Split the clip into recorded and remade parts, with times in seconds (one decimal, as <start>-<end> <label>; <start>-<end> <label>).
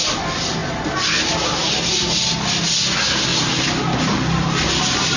0.0-5.2 recorded